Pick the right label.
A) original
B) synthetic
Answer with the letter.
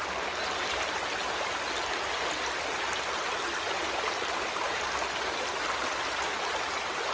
A